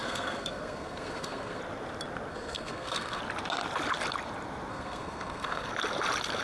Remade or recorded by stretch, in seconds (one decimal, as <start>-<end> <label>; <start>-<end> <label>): 0.0-1.6 remade; 1.6-2.3 recorded; 2.3-3.2 remade; 3.2-4.7 recorded; 4.7-5.7 remade; 5.7-6.4 recorded